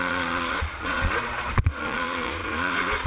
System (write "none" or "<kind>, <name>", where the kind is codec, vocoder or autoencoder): vocoder, Vocos